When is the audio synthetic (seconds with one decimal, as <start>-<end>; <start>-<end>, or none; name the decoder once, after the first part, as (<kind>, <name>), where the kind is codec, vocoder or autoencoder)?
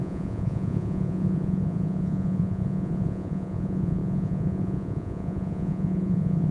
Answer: 0.0-6.5 (vocoder, Vocos)